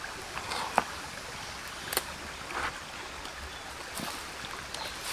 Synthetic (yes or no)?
no